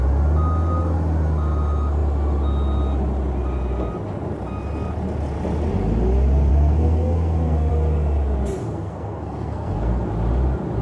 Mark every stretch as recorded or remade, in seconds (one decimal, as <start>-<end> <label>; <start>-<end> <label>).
0.0-6.5 recorded; 6.5-7.7 remade; 7.7-8.6 recorded; 8.6-10.1 remade; 10.1-10.8 recorded